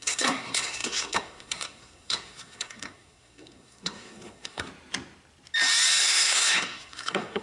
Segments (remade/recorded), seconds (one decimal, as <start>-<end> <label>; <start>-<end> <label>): 0.0-4.7 remade; 4.7-6.0 recorded; 6.0-7.4 remade